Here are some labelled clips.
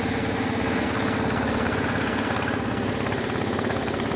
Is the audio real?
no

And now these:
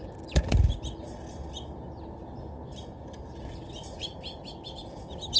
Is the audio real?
yes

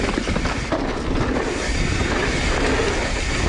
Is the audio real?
yes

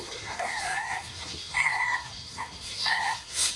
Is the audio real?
no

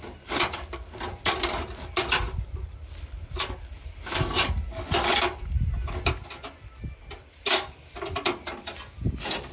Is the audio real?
yes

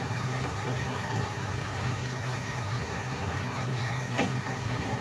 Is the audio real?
no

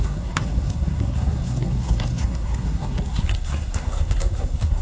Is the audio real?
no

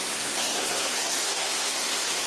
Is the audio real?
no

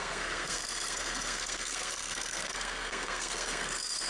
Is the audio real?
no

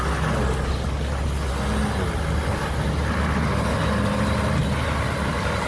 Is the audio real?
yes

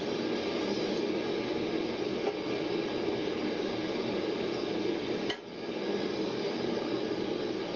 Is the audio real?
yes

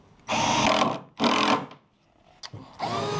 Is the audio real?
yes